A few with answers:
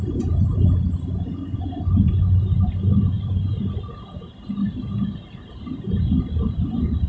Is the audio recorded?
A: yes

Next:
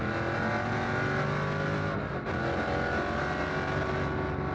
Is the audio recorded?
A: yes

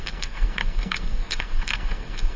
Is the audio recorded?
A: no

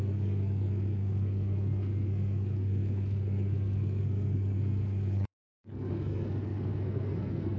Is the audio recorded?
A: no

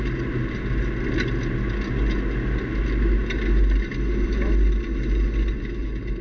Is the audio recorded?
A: yes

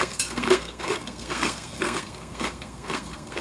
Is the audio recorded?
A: no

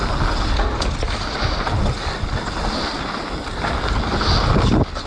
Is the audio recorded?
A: yes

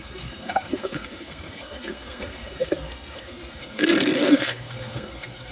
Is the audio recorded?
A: no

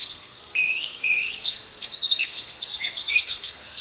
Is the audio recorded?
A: no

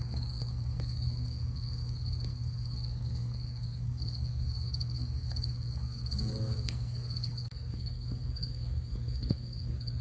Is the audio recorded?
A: no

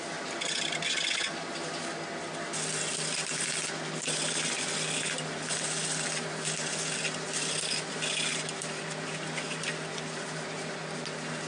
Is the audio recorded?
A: yes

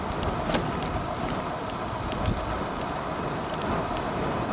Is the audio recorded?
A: yes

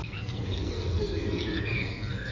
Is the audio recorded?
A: no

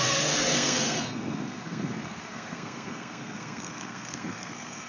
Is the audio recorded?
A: no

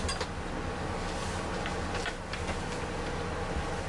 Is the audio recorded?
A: yes